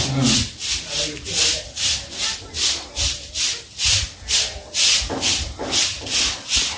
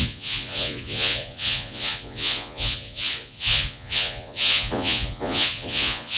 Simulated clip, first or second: second